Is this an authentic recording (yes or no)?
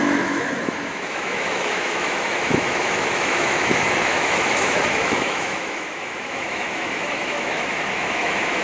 no